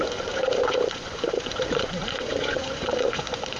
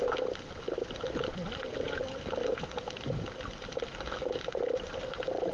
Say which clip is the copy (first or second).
first